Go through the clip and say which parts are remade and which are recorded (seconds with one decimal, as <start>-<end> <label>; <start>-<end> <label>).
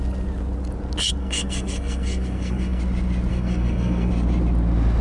0.0-1.2 recorded; 1.2-2.8 remade; 2.8-3.3 recorded; 3.3-4.1 remade; 4.1-5.0 recorded